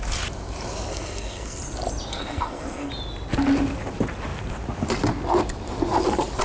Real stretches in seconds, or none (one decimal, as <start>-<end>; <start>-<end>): 0.0-0.9; 1.6-2.1; 2.9-6.4